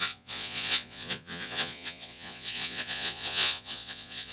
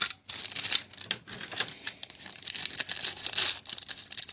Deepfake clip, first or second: first